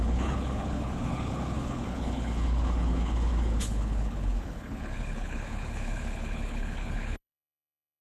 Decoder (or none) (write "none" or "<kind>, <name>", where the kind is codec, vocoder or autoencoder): codec, HILCodec